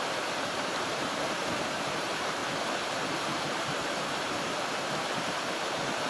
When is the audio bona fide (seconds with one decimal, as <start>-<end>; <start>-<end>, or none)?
2.4-3.4